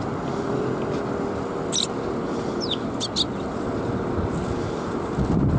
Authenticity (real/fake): real